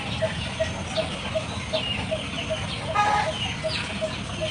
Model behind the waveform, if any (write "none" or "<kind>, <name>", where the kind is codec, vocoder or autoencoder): none